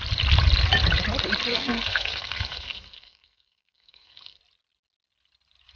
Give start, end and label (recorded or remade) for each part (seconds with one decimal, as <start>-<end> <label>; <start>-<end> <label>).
0.0-1.5 recorded; 1.5-4.4 remade; 4.4-5.8 recorded